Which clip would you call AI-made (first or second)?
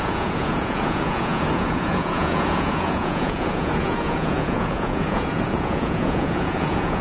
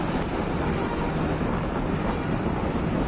first